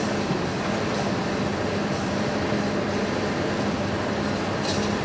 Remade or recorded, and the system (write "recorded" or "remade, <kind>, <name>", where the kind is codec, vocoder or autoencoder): recorded